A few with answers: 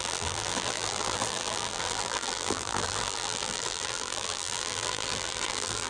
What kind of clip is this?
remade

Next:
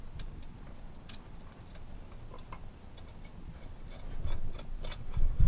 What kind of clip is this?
recorded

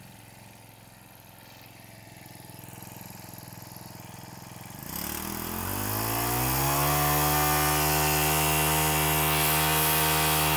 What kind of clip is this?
recorded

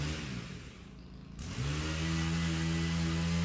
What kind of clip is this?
recorded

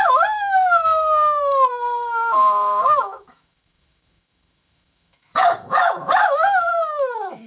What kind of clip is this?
remade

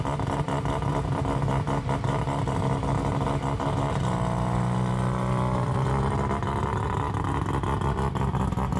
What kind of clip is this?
recorded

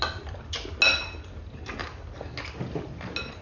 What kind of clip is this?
recorded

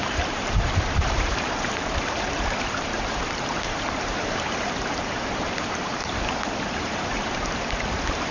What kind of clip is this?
remade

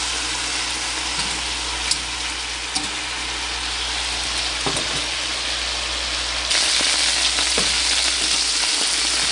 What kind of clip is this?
recorded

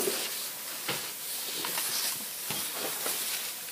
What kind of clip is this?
recorded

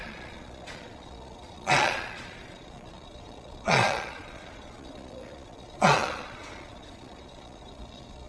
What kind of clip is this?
remade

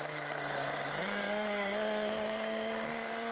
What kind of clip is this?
remade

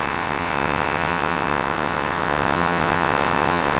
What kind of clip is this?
remade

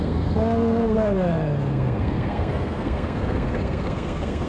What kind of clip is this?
remade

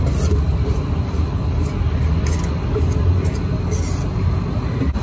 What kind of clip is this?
recorded